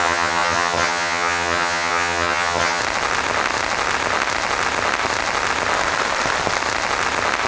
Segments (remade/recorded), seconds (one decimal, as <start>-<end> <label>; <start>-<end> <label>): 0.0-2.8 remade; 2.8-7.5 recorded